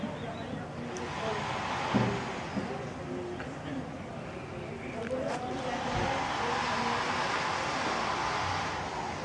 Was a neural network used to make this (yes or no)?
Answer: no